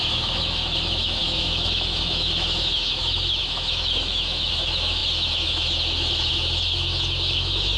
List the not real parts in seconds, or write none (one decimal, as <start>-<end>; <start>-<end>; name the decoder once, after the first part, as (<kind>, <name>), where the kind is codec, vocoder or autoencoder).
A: 0.0-7.8 (autoencoder, DAC-VAE)